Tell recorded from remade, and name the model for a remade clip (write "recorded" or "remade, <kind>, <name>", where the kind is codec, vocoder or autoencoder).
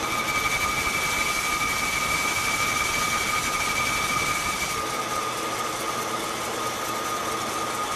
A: recorded